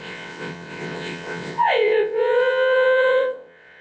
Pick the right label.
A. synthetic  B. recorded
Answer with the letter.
A